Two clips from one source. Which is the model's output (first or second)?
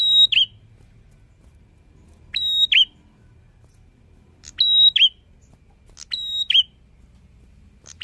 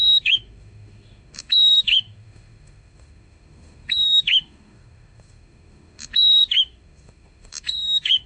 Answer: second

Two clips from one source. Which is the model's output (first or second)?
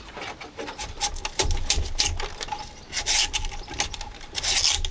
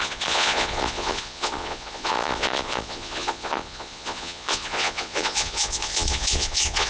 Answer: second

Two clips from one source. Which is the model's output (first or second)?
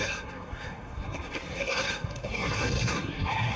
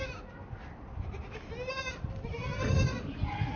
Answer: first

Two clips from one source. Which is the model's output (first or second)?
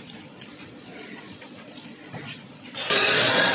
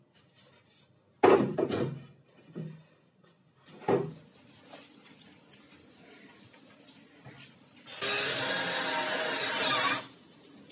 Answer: first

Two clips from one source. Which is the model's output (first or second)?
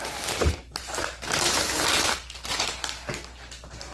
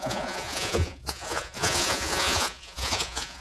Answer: second